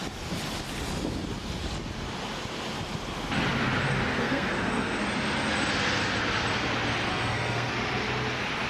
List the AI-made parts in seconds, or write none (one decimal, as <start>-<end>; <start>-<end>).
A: 4.1-5.0; 7.1-7.7